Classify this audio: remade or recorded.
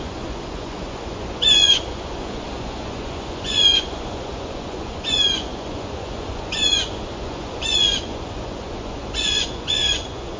remade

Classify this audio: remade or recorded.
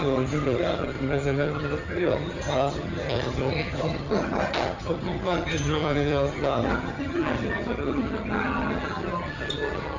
remade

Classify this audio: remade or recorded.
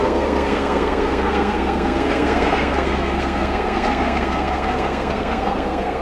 remade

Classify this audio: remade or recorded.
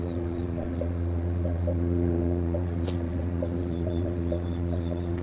remade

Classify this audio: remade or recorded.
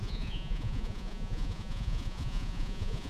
remade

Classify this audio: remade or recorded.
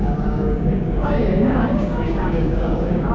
remade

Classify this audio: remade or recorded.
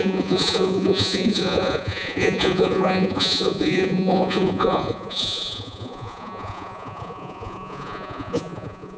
remade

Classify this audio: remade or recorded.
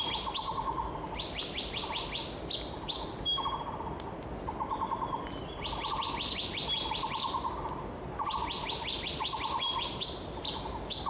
recorded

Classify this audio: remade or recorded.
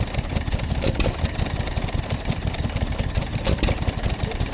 recorded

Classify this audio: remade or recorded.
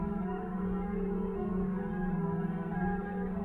remade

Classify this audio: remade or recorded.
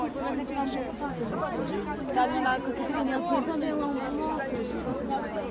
recorded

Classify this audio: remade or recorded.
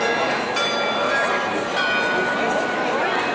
recorded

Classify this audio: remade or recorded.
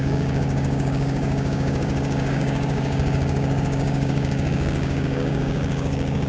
remade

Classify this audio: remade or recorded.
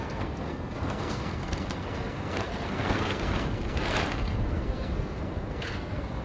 remade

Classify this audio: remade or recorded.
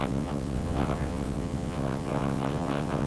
remade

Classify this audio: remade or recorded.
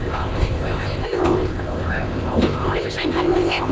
remade